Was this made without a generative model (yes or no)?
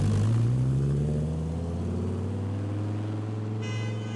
yes